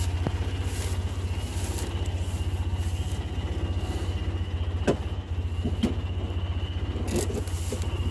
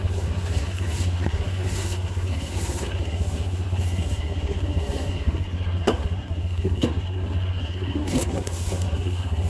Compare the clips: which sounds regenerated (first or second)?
second